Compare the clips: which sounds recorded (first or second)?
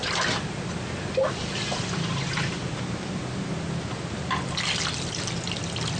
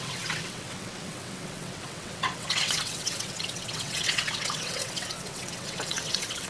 first